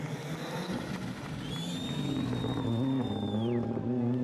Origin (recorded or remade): recorded